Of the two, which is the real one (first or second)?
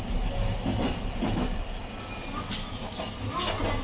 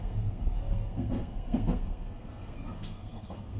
first